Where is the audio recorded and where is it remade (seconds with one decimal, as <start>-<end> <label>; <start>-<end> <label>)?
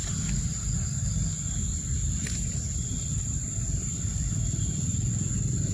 0.0-1.7 recorded; 1.7-5.1 remade; 5.1-5.7 recorded